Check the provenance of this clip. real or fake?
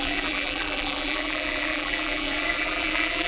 fake